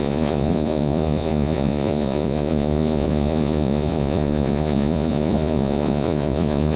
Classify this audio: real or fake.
fake